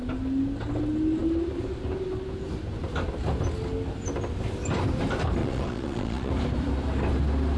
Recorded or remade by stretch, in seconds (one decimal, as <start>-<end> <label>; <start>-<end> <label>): 0.0-5.4 recorded; 5.4-6.3 remade; 6.3-7.6 recorded